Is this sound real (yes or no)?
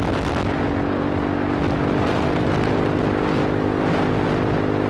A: yes